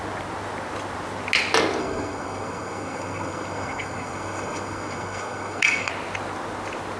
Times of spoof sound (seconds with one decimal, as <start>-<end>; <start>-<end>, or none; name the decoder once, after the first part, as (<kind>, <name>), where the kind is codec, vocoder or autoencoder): 1.8-5.9 (codec, SNAC)